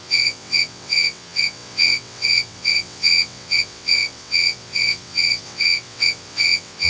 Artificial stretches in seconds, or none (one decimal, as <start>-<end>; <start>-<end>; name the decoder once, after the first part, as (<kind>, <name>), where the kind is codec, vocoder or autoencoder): 0.0-6.9 (vocoder, WaveNeXt)